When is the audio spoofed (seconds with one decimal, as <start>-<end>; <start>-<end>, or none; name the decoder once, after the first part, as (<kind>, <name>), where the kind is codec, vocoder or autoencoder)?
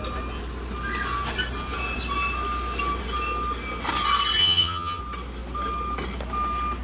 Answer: 4.4-5.0 (vocoder, HiFi-GAN)